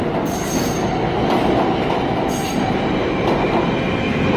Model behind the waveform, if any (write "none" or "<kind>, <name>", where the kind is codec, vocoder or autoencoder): none